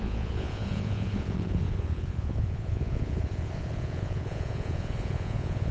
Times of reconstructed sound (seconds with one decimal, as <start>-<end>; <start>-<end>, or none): 0.0-5.7